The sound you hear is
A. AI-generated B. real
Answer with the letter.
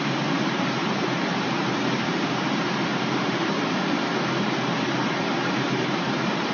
A